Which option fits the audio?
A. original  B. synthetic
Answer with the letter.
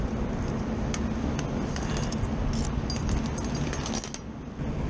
A